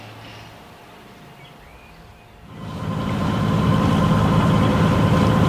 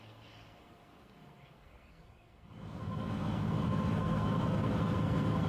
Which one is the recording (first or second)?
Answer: first